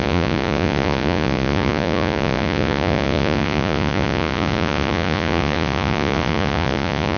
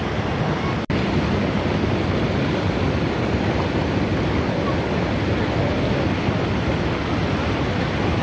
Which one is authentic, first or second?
second